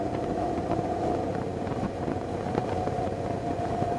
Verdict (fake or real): fake